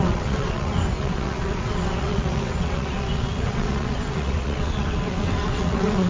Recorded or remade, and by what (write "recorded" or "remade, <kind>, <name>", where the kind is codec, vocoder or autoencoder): remade, vocoder, WaveNeXt